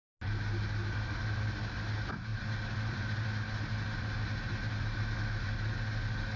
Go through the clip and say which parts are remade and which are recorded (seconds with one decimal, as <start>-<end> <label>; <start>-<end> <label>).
0.0-2.3 recorded; 2.3-3.0 remade; 3.0-6.4 recorded